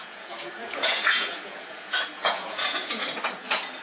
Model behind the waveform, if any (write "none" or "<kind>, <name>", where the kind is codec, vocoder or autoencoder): vocoder, Vocos